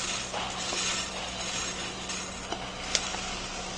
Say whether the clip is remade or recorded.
recorded